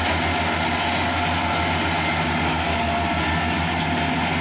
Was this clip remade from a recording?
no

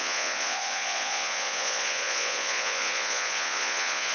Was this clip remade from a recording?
yes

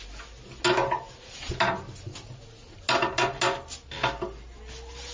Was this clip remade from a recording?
no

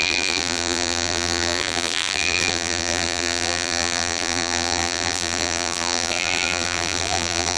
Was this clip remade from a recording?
yes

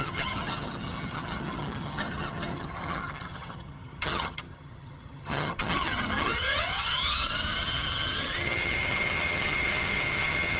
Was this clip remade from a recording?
yes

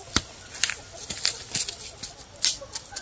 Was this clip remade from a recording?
no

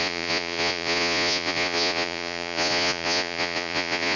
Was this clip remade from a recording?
yes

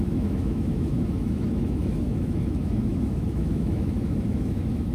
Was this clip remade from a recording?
yes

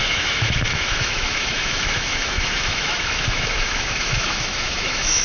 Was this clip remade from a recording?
yes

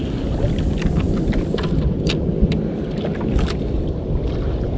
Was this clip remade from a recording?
no